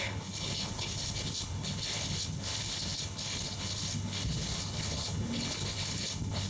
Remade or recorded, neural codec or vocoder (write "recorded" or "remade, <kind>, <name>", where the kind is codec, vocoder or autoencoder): remade, codec, HILCodec